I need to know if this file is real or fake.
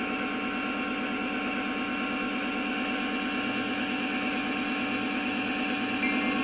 real